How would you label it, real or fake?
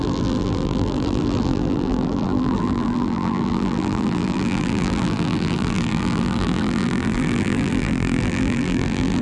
fake